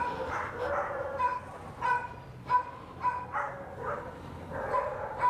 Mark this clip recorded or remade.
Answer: recorded